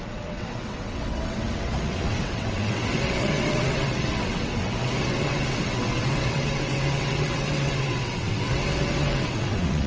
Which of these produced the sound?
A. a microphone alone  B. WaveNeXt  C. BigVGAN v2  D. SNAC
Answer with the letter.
B